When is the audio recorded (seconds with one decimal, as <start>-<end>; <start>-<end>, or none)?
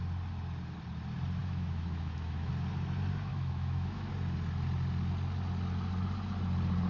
0.0-1.4; 2.5-3.3; 4.1-6.9